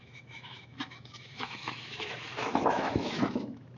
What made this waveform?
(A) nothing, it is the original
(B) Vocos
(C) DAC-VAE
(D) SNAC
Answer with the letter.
C